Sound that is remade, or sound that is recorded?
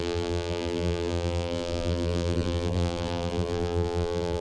remade